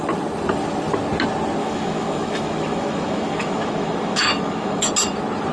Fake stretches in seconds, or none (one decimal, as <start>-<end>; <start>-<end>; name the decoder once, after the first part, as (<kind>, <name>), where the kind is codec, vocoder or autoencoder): 1.6-4.9 (autoencoder, DAC-VAE)